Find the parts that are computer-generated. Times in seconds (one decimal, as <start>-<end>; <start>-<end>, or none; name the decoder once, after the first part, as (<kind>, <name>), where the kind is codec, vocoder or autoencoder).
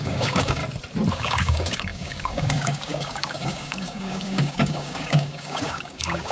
0.0-0.6 (codec, DAC); 1.1-6.3